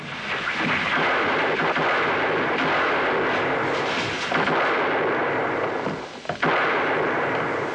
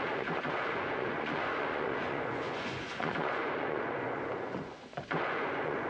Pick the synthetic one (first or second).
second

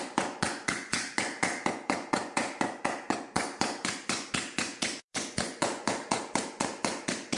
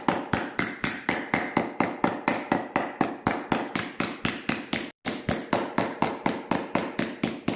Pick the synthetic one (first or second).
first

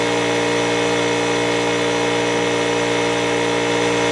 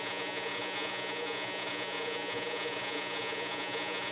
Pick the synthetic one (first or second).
second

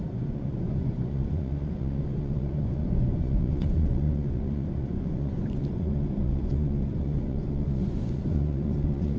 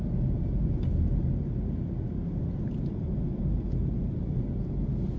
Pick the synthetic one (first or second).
first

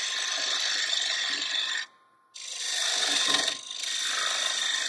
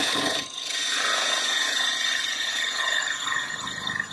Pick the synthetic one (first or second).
second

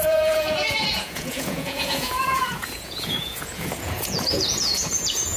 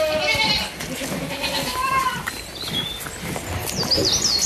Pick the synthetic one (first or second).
first